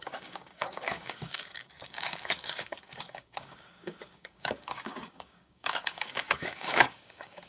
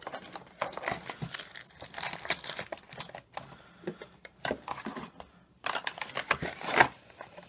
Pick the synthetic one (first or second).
first